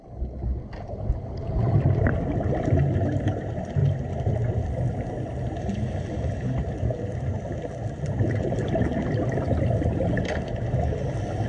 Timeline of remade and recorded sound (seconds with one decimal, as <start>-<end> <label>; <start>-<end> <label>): 0.0-11.5 recorded